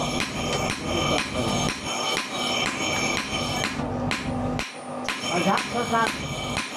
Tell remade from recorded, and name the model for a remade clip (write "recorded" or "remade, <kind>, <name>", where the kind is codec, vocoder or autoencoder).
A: recorded